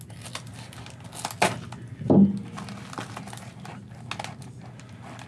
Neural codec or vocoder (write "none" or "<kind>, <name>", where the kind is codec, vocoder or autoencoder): none